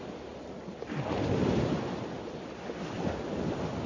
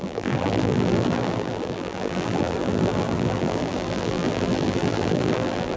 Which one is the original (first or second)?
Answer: first